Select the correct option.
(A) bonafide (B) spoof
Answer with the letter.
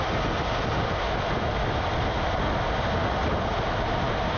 A